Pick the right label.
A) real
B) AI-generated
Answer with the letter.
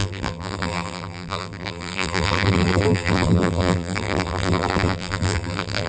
B